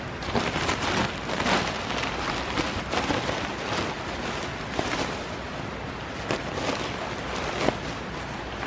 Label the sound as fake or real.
real